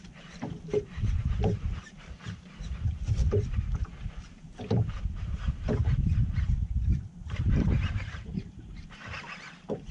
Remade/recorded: remade